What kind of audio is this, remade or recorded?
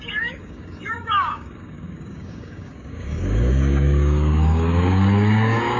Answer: remade